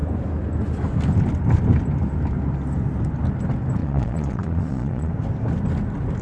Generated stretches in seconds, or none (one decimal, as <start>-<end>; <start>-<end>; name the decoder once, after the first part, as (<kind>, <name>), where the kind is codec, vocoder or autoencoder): 3.8-5.1 (vocoder, Vocos)